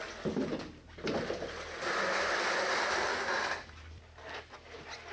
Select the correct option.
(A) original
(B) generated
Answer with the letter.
A